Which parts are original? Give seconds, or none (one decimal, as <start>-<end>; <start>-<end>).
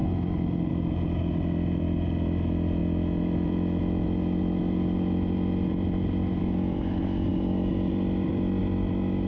0.0-9.3